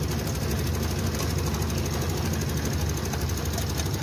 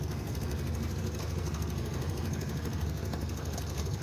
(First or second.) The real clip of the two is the first